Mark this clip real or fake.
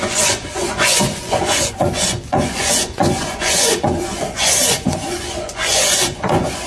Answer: fake